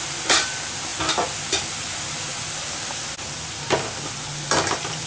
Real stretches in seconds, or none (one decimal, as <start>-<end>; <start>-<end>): 0.0-5.1